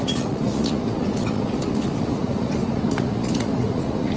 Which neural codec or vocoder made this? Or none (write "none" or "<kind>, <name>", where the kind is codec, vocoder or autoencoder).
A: vocoder, Vocos